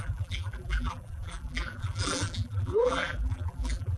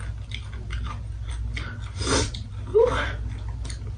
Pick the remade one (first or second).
first